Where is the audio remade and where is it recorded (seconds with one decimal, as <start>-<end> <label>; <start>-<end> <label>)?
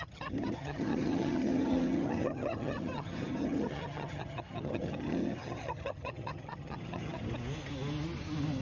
0.0-7.2 remade; 7.2-8.6 recorded